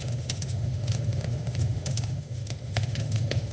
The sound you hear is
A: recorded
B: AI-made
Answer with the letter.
B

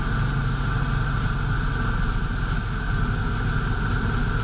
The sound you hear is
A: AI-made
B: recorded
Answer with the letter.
B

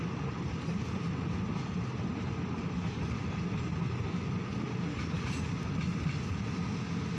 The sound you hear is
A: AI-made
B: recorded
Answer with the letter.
B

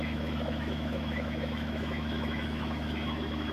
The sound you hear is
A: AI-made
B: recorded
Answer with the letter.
A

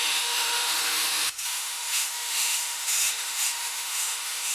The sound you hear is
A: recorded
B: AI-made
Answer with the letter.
B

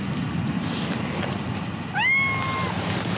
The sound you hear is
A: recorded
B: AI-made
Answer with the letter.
A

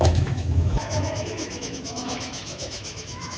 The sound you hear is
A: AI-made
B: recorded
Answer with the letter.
A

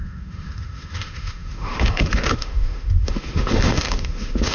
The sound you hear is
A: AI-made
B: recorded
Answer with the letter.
A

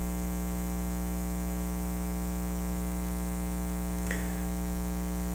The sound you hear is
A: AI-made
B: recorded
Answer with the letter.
A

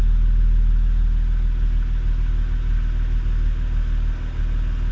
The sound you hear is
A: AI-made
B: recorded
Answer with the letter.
B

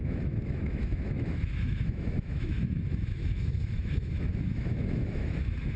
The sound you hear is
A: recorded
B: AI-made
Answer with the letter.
B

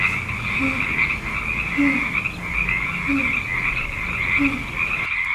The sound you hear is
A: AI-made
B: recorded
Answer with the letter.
B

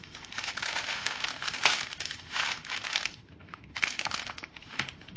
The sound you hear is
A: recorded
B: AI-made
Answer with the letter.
B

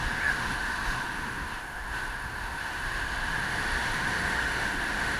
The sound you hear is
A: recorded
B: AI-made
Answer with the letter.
B